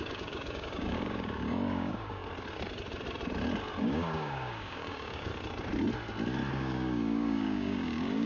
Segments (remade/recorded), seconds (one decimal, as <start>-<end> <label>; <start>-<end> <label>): 0.0-2.2 remade; 2.2-3.8 recorded; 3.8-5.3 remade; 5.3-6.5 recorded; 6.5-8.3 remade